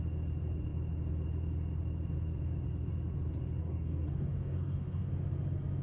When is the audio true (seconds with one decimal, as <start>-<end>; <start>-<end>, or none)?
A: 0.0-3.6; 5.1-5.8